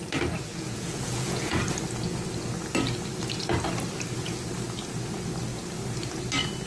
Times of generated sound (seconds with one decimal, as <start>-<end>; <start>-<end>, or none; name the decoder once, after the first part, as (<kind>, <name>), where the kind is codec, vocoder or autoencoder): 0.5-1.6 (vocoder, Vocos)